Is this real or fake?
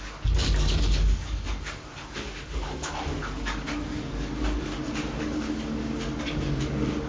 fake